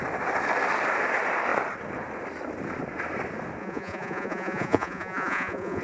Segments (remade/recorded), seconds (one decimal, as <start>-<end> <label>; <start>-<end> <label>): 0.0-3.6 recorded; 3.6-5.8 remade

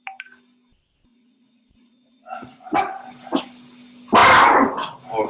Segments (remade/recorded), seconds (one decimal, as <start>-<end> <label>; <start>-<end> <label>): 0.0-1.1 recorded; 1.1-2.9 remade; 2.9-5.3 recorded

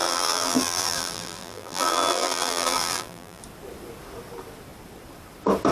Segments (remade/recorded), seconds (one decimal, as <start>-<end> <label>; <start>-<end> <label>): 0.0-3.4 remade; 3.4-5.7 recorded

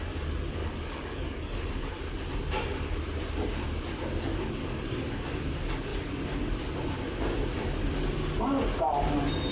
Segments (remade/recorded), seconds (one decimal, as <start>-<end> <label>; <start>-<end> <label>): 0.0-0.6 recorded; 0.6-1.7 remade; 1.7-4.6 recorded; 4.6-5.4 remade; 5.4-9.5 recorded

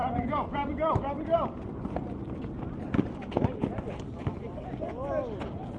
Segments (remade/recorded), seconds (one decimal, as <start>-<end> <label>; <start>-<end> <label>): 0.0-2.4 remade; 2.4-5.8 recorded

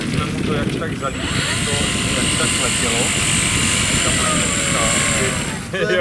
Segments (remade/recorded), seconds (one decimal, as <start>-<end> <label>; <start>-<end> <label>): 0.0-6.0 recorded

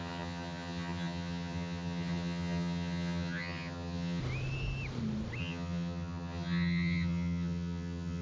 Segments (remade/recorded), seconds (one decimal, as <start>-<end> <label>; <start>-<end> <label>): 0.0-4.2 remade; 4.2-5.4 recorded; 5.4-8.2 remade

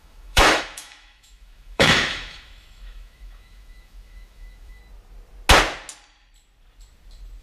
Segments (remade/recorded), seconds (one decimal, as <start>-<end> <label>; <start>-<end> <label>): 0.0-4.8 remade; 4.8-7.4 recorded